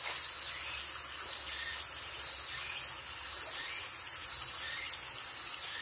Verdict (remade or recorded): recorded